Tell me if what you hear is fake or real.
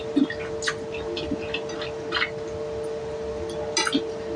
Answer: real